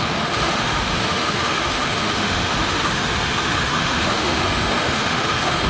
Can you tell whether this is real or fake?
fake